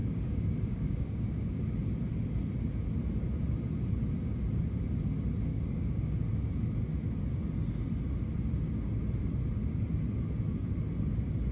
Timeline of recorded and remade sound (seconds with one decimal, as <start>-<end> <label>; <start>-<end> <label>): 0.0-1.7 remade; 1.7-5.5 recorded; 5.5-6.2 remade; 6.2-11.5 recorded